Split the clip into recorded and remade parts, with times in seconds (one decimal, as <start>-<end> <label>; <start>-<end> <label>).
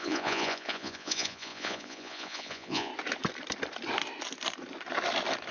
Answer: 0.0-2.9 remade; 2.9-5.5 recorded